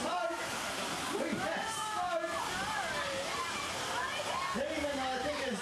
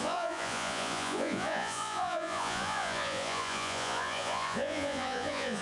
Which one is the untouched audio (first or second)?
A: first